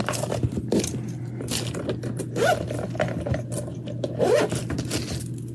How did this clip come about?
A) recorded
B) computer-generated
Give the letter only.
A